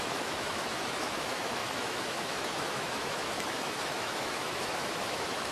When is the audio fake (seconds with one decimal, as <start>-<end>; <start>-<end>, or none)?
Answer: 0.0-5.5